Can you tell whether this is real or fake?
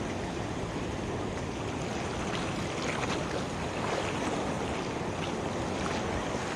real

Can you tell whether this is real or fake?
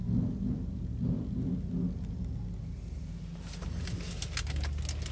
real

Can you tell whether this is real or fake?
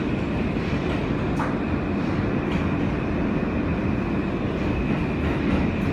real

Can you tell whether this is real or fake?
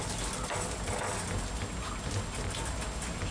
real